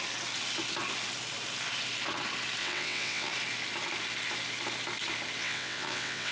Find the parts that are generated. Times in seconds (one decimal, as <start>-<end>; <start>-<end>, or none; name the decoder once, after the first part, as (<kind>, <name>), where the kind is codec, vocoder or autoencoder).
2.6-3.3 (vocoder, WaveNeXt); 5.4-6.3